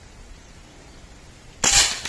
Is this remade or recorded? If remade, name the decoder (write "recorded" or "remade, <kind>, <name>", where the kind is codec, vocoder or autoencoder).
recorded